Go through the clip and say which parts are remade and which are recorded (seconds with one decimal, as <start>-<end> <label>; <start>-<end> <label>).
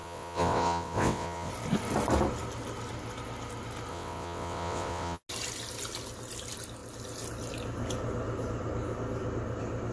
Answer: 0.0-1.5 remade; 1.5-3.9 recorded; 3.9-5.2 remade; 5.2-9.9 recorded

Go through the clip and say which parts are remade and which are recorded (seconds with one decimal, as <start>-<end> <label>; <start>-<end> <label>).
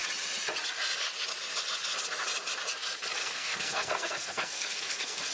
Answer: 0.0-3.2 recorded; 3.2-5.3 remade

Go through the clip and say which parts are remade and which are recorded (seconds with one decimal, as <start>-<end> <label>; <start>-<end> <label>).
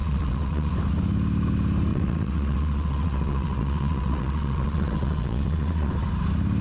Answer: 0.0-0.7 remade; 0.7-1.9 recorded; 1.9-5.9 remade; 5.9-6.6 recorded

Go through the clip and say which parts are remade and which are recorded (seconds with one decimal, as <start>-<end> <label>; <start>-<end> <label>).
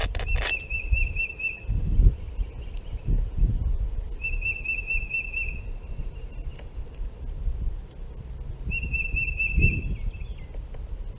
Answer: 0.0-6.5 recorded; 6.5-7.9 remade; 7.9-11.2 recorded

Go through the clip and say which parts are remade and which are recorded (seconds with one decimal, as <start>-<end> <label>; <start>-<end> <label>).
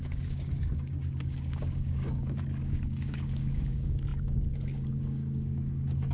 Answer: 0.0-6.1 remade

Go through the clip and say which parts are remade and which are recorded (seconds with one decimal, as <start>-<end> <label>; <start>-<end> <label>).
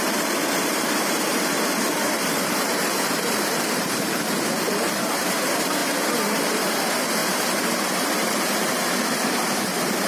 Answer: 0.0-5.8 remade; 5.8-6.4 recorded; 6.4-10.1 remade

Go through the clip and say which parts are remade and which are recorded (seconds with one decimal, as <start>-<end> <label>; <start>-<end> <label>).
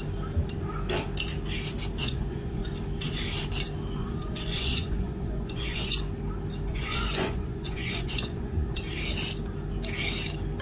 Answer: 0.0-2.0 recorded; 2.0-2.7 remade; 2.7-4.0 recorded; 4.0-6.0 remade; 6.0-6.7 recorded; 6.7-8.8 remade; 8.8-10.6 recorded